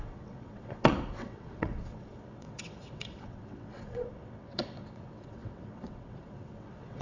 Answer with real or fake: fake